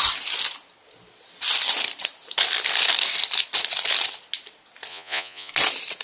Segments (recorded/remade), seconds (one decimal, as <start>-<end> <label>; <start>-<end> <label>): 0.0-4.9 recorded; 4.9-5.5 remade; 5.5-6.0 recorded